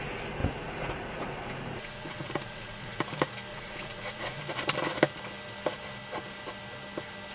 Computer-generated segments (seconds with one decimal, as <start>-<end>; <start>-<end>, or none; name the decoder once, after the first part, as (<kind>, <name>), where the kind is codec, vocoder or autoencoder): 0.4-3.0 (vocoder, Vocos); 3.5-4.4